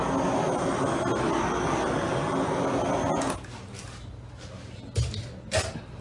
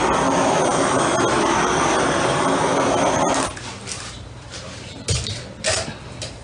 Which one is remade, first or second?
second